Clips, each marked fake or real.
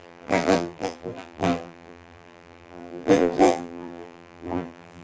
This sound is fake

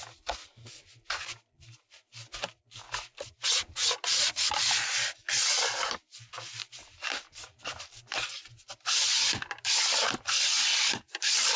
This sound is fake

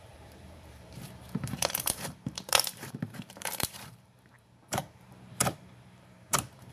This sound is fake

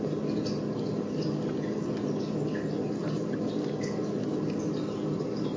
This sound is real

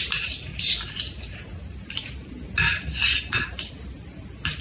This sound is real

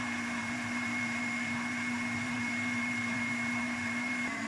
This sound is fake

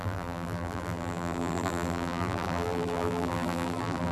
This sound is fake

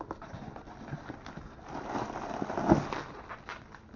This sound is real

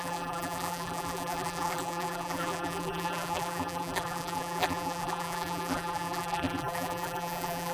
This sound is fake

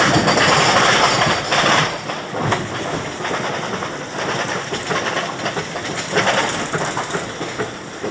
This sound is fake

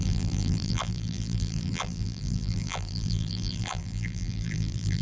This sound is fake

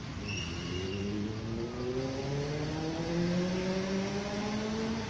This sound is real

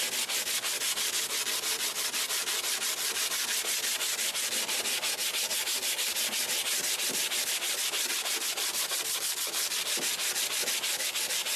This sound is real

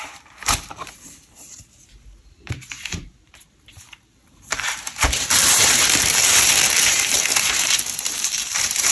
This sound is fake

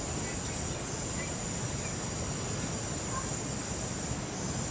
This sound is real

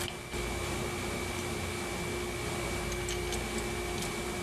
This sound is real